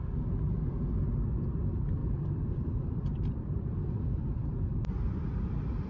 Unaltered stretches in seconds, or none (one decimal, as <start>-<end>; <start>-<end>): 0.0-2.0; 5.5-5.9

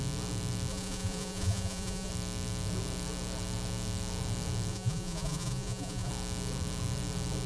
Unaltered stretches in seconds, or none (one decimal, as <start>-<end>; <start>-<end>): 0.0-0.7; 2.1-4.7; 6.1-7.5

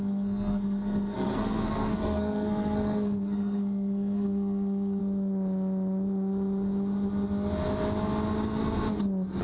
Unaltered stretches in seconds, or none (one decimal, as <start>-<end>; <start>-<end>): 5.0-9.4

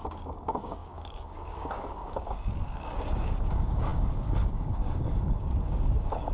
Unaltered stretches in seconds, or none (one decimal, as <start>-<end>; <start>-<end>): none